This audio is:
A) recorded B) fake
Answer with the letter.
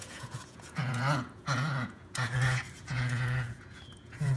B